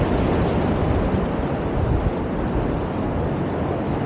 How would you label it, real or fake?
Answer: real